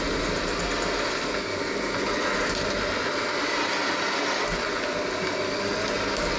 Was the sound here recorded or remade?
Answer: recorded